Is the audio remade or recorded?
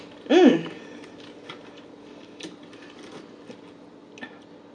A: recorded